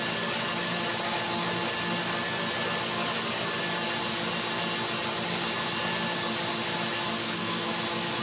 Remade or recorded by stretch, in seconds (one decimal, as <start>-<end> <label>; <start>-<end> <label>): 0.0-7.2 recorded; 7.2-7.7 remade; 7.7-8.2 recorded